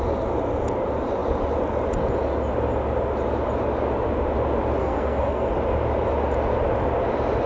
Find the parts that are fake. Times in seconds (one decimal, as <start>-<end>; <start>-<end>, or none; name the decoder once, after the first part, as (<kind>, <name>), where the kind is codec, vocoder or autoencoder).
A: 4.8-5.5 (codec, SNAC)